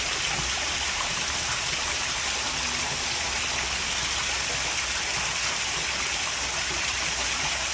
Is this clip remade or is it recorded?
recorded